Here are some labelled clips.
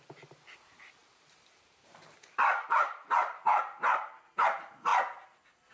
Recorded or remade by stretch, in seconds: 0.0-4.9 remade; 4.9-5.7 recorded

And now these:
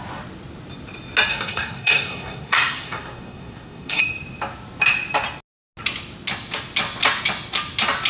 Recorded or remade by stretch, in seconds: 0.0-1.3 recorded; 1.3-4.0 remade; 4.0-8.1 recorded

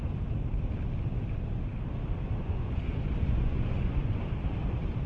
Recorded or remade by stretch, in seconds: 0.0-2.4 recorded; 2.4-4.2 remade; 4.2-5.1 recorded